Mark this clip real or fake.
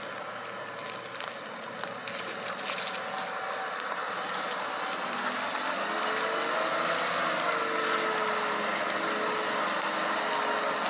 real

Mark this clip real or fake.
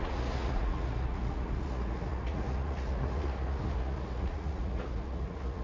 fake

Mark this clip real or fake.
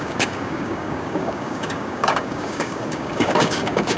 fake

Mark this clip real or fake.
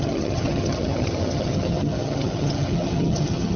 fake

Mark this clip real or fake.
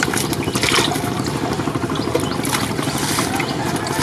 real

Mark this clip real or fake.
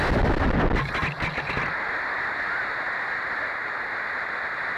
real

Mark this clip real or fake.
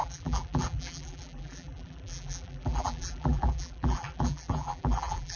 fake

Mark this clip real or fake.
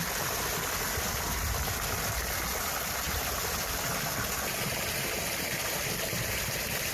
real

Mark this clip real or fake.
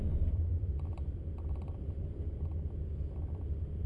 fake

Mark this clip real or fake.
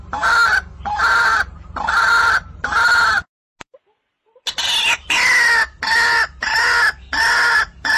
real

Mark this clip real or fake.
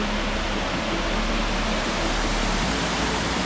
real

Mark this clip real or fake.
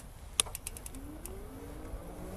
real